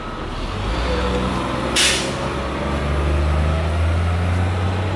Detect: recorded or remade recorded